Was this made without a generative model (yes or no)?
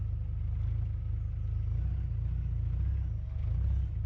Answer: yes